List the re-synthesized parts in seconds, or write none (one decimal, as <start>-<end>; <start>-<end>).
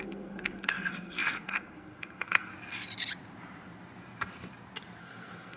0.0-2.5; 5.0-5.6